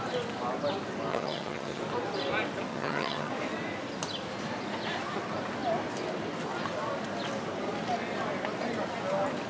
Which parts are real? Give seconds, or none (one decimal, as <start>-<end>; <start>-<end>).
0.0-1.1; 1.8-2.7; 3.3-9.5